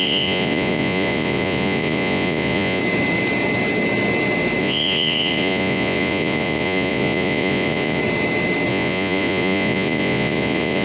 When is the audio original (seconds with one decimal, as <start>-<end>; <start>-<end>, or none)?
2.8-4.6; 8.0-8.7